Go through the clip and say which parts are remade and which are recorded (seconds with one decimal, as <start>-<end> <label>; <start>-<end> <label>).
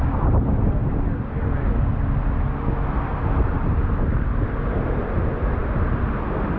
0.0-3.1 recorded; 3.1-5.1 remade; 5.1-6.6 recorded